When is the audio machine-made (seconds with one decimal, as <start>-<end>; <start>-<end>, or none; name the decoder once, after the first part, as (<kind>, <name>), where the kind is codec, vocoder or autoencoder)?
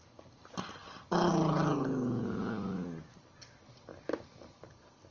none